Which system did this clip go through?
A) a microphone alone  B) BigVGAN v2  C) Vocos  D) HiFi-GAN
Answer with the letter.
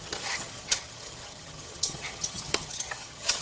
D